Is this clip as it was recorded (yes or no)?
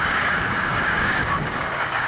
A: no